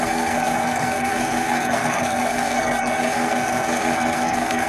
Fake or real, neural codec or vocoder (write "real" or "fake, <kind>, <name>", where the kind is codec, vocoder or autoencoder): fake, codec, SNAC